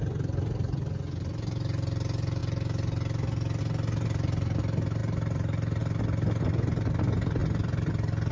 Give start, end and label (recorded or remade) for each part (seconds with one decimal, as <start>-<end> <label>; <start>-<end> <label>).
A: 0.0-7.4 recorded; 7.4-7.9 remade; 7.9-8.3 recorded